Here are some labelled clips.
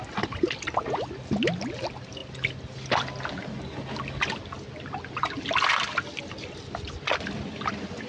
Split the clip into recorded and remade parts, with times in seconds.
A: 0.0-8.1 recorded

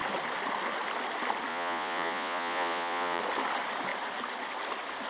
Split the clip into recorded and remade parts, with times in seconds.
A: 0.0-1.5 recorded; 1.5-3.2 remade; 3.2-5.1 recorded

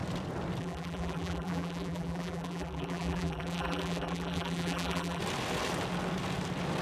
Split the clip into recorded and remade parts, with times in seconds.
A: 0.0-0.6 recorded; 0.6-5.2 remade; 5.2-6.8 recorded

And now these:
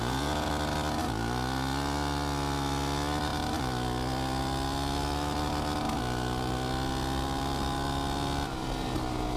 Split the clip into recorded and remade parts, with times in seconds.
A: 0.0-0.5 remade; 0.5-9.4 recorded